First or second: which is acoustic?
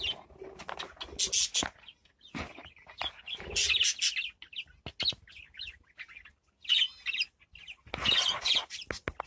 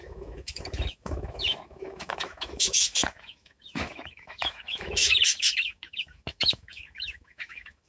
first